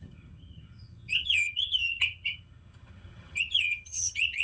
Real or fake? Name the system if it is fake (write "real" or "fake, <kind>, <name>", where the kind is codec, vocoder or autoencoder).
fake, vocoder, HiFi-GAN